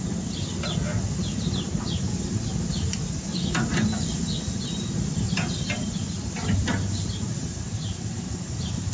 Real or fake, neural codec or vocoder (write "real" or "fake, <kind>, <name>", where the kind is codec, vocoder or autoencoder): real